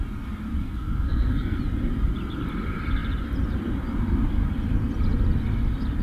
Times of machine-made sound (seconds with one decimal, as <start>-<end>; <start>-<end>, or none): 0.6-1.6